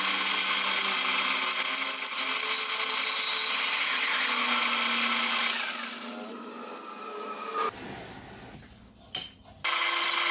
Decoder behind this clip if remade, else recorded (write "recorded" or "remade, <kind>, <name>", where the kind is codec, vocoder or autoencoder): recorded